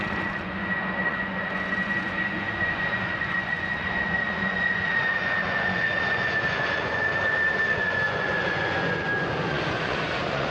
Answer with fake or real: fake